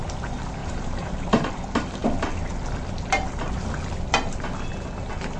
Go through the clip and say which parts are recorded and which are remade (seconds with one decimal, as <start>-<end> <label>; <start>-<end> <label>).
0.0-0.6 recorded; 0.6-1.5 remade; 1.5-5.4 recorded